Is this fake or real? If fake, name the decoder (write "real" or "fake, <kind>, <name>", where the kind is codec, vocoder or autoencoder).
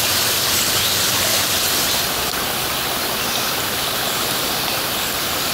real